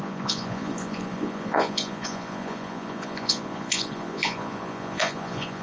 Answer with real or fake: fake